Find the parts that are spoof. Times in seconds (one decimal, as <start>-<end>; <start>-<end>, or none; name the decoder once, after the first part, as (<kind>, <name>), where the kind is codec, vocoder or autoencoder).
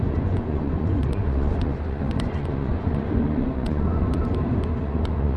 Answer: 0.0-4.2 (vocoder, Vocos); 4.8-5.4